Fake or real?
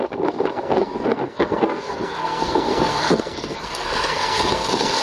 fake